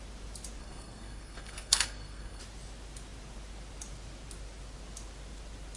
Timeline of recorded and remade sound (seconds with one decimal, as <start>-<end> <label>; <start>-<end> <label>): 0.0-0.6 recorded; 0.6-2.4 remade; 2.4-5.8 recorded